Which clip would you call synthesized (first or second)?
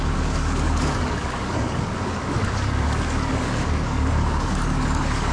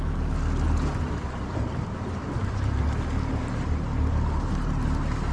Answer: first